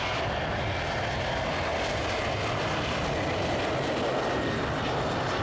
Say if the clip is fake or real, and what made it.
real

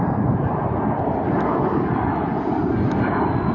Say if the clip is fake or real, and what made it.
real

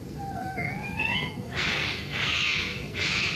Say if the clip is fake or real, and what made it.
fake, codec, SNAC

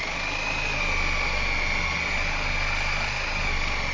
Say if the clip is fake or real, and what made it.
real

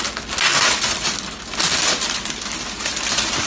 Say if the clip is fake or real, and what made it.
real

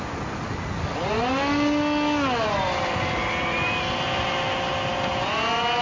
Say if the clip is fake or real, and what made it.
real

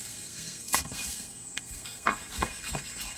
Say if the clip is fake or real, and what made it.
fake, codec, SNAC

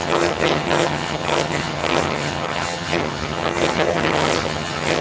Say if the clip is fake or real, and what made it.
fake, vocoder, HiFi-GAN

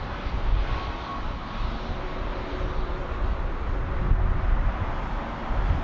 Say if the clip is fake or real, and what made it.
real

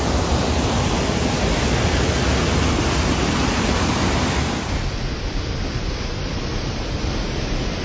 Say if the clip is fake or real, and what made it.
real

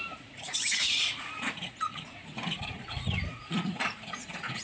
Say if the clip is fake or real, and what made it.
fake, vocoder, Vocos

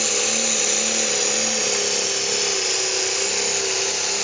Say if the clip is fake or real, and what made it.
real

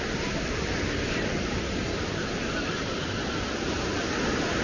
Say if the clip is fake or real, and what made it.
real